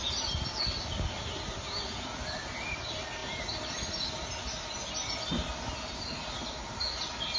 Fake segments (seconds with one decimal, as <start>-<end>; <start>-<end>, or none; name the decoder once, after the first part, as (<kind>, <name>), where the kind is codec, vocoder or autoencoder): none